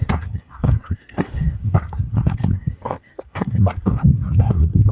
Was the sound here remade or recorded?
remade